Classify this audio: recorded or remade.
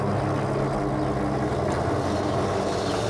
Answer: recorded